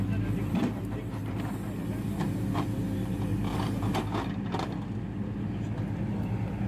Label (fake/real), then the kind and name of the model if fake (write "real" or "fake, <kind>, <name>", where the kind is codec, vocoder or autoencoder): real